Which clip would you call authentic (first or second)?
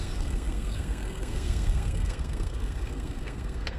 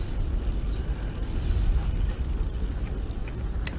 second